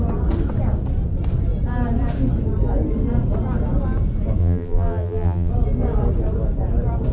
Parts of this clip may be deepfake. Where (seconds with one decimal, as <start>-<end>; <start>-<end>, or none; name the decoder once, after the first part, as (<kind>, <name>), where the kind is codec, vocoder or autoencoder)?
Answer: 4.4-5.5 (vocoder, BigVGAN v2)